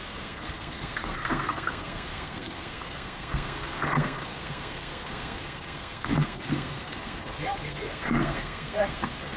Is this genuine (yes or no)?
no